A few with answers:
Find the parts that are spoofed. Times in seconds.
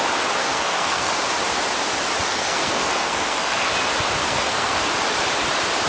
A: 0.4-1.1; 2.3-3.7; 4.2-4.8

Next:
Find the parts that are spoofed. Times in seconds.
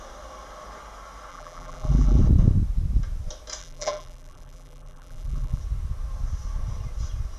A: 1.3-2.2; 3.6-5.6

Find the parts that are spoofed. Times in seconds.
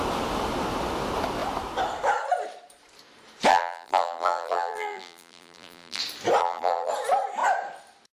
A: 3.5-6.0; 6.4-6.9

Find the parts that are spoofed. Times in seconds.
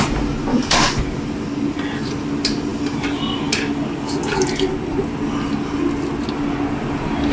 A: 0.5-1.0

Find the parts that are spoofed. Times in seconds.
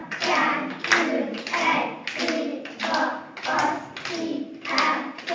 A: none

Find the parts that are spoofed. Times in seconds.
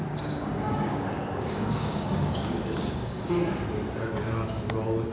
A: 0.5-3.6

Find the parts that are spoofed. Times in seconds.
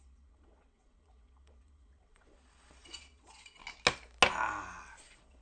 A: 0.0-3.6; 5.0-5.4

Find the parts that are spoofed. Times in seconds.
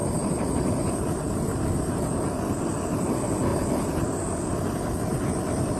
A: 0.0-2.0; 3.5-5.1